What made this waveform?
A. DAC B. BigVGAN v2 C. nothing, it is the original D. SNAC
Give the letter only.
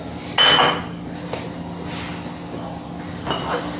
C